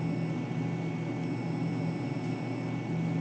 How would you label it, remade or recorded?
recorded